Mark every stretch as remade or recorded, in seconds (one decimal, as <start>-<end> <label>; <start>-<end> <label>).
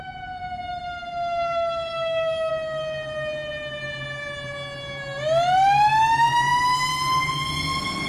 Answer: 0.0-1.9 recorded; 1.9-2.5 remade; 2.5-8.1 recorded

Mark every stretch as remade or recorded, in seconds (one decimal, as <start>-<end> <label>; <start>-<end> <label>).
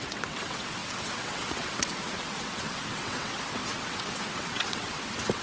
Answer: 0.0-5.4 remade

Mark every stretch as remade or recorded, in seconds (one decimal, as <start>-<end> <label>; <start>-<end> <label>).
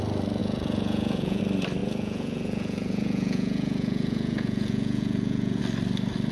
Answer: 0.0-0.4 recorded; 0.4-1.4 remade; 1.4-1.8 recorded; 1.8-5.6 remade; 5.6-6.3 recorded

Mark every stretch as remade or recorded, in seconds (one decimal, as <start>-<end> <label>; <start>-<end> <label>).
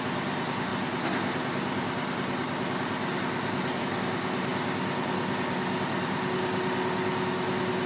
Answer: 0.0-7.9 recorded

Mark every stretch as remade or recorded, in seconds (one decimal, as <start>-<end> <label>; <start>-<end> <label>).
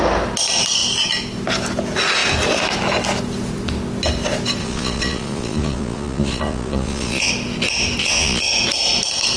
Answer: 0.0-4.6 recorded; 4.6-7.3 remade; 7.3-8.0 recorded; 8.0-8.5 remade; 8.5-9.4 recorded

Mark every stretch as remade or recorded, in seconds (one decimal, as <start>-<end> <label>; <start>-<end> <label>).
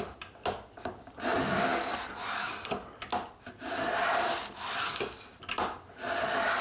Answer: 0.0-6.6 recorded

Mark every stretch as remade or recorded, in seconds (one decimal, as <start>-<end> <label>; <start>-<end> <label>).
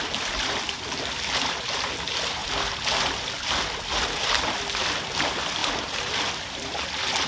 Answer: 0.0-7.3 recorded